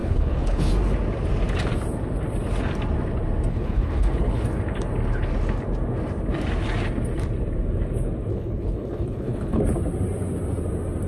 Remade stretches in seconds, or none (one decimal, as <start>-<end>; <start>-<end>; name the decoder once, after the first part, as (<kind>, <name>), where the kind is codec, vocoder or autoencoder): 0.0-0.7 (codec, HILCodec); 3.5-4.3; 8.3-9.6